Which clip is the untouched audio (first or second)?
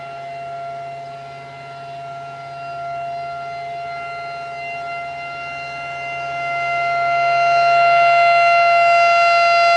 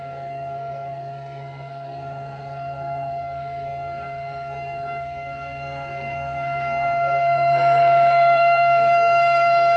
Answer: first